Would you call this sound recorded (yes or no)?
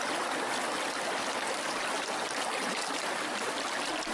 yes